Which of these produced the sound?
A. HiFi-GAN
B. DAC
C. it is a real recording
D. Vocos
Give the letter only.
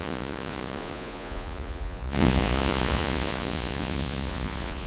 D